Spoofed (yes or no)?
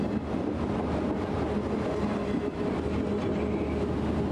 no